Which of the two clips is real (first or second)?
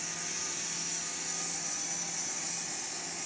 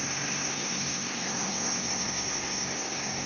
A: first